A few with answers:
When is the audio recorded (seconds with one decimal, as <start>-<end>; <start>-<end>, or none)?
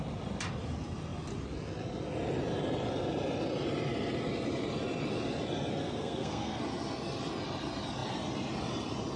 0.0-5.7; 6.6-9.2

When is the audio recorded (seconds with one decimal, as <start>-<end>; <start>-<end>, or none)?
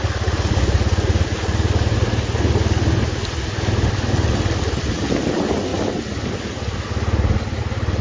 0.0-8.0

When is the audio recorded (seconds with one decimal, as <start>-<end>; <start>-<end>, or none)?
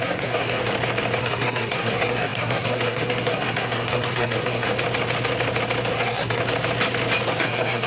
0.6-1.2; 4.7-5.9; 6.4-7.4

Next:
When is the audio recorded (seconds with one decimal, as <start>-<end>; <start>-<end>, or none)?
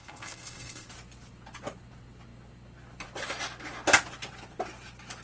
0.9-5.2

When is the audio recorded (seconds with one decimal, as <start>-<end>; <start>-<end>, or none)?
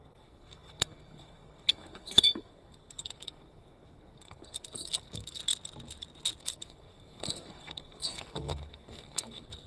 5.4-6.4